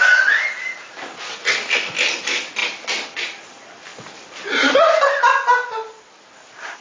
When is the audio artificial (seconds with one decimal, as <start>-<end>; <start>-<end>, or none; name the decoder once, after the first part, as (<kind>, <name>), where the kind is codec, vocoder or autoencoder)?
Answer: 2.6-3.4 (vocoder, BigVGAN v2); 3.9-5.0